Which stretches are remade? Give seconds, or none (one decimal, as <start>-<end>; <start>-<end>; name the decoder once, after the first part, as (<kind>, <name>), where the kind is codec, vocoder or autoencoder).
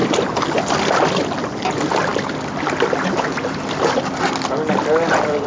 none